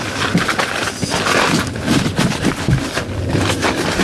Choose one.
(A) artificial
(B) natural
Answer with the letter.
B